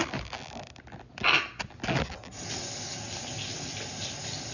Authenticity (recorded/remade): recorded